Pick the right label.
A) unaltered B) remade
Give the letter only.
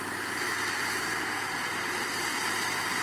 A